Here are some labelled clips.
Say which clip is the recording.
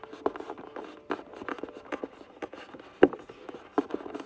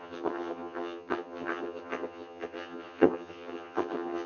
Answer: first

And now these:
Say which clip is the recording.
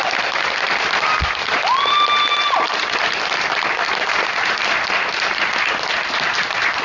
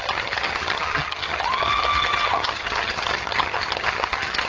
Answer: first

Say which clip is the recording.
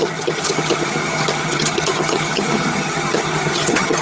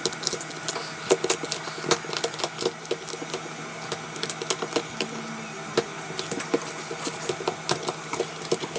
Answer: second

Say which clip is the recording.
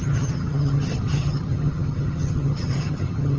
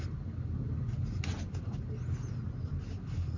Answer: second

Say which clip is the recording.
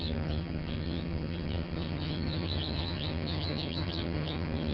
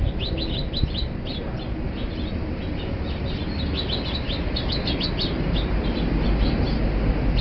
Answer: second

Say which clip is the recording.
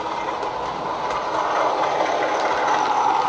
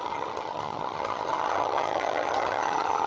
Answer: first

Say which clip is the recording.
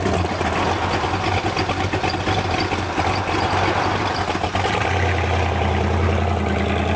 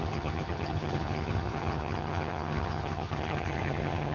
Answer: first